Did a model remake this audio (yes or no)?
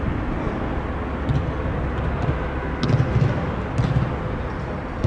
no